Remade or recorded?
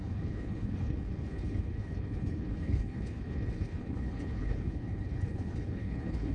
remade